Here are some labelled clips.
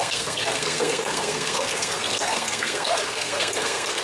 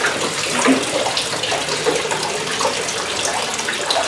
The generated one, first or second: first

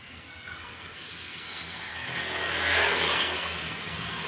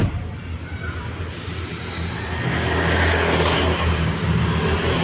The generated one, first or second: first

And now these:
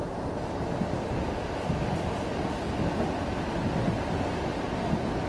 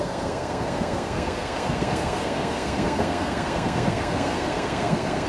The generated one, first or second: second